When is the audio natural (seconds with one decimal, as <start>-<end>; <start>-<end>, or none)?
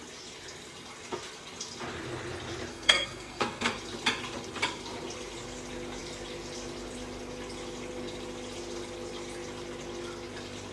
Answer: 0.0-2.7; 3.7-10.7